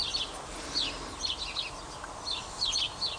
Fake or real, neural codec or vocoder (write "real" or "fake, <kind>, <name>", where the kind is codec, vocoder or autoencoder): real